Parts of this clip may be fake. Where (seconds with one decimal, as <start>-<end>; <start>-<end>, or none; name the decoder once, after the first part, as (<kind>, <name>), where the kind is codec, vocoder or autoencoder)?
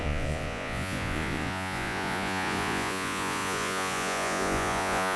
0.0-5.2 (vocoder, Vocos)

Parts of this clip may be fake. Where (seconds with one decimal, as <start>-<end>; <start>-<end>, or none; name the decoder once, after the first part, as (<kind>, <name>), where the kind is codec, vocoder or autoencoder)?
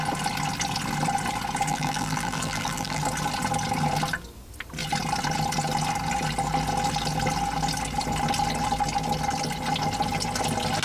1.7-3.0 (vocoder, BigVGAN v2)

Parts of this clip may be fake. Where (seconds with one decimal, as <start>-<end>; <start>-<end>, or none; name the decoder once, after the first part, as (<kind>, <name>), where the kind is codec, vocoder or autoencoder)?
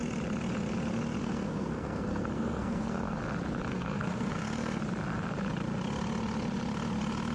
1.2-3.2 (codec, SNAC); 3.7-4.8